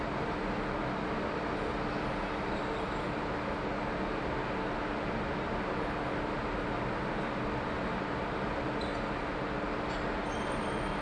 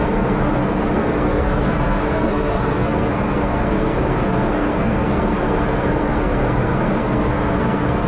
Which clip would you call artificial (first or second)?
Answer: second